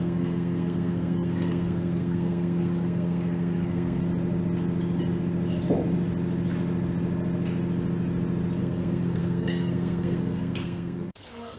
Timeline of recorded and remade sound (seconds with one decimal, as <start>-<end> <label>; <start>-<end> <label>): 0.0-4.0 remade; 4.0-8.6 recorded; 8.6-11.6 remade